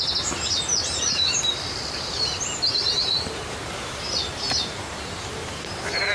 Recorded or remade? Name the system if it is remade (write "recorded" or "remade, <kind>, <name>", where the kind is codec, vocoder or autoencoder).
remade, vocoder, BigVGAN v2